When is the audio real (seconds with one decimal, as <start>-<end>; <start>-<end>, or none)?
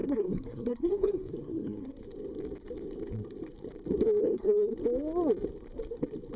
2.0-4.2; 4.7-6.4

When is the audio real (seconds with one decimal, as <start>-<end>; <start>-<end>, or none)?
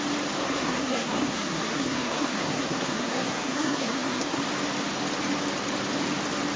0.0-0.4; 4.4-6.6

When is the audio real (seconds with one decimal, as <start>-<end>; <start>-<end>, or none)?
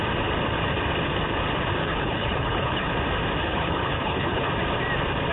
0.0-1.8; 2.9-3.4; 4.5-5.3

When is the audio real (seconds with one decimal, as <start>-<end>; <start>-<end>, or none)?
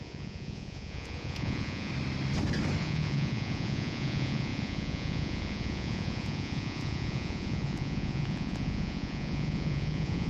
1.9-2.8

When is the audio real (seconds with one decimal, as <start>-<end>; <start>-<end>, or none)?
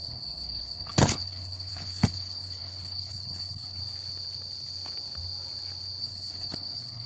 3.8-6.0